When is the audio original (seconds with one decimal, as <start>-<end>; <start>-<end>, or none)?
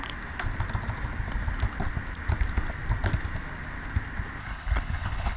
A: 0.0-4.4